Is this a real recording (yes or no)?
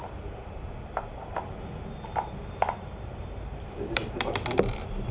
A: no